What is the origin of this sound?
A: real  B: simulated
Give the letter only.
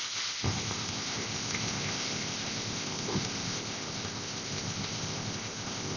B